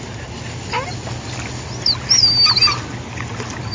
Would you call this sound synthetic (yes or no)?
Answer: no